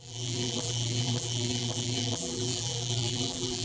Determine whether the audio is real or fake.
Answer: fake